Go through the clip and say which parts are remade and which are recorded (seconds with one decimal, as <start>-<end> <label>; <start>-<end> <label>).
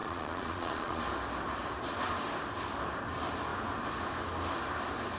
0.0-1.0 remade; 1.0-5.2 recorded